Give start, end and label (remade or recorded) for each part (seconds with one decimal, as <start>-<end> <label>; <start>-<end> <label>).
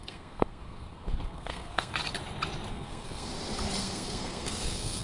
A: 0.0-1.9 remade; 1.9-2.7 recorded; 2.7-3.3 remade; 3.3-3.8 recorded; 3.8-5.0 remade